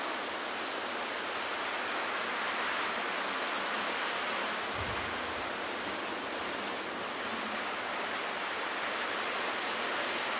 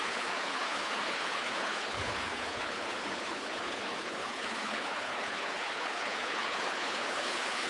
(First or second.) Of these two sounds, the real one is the first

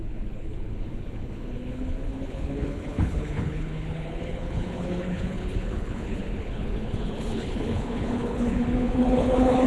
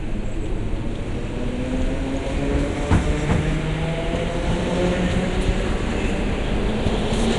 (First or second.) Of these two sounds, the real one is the second